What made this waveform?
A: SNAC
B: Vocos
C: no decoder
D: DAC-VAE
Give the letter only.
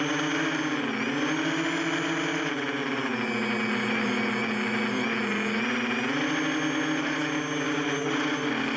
C